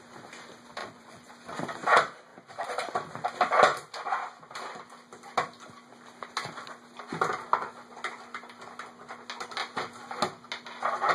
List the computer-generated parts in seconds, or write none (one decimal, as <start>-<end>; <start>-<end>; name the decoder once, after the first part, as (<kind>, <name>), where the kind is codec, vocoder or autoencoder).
0.8-1.3 (vocoder, Vocos)